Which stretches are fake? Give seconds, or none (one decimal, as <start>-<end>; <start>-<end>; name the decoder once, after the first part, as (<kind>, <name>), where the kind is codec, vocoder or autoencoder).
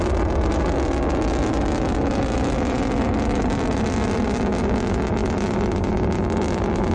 none